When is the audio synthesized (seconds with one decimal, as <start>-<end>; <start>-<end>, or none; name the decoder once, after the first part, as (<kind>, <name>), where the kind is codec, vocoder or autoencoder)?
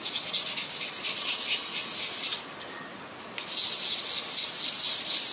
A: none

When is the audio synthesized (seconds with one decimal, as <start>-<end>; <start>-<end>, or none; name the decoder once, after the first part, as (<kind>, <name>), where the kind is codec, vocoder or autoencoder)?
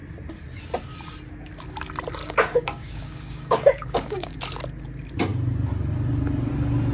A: 2.2-4.4 (codec, DAC)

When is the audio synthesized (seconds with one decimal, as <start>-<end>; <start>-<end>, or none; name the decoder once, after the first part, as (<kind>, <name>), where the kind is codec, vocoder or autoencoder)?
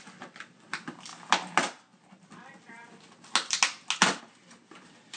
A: none